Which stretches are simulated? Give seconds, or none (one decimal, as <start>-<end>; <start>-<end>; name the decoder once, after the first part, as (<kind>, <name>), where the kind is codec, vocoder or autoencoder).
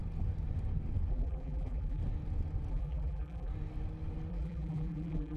1.1-2.0 (vocoder, BigVGAN v2); 2.7-3.5; 4.3-5.4